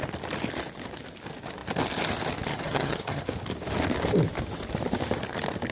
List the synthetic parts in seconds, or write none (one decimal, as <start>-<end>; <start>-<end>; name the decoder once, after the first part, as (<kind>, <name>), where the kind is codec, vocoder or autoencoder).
2.5-3.2 (vocoder, HiFi-GAN)